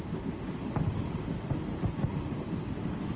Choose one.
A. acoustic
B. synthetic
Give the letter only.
A